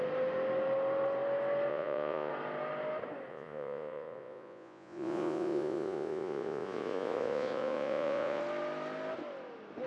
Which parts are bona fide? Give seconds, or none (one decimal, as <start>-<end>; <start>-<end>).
0.0-1.7; 2.3-3.3; 8.4-9.9